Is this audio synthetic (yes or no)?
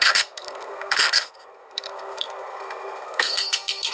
yes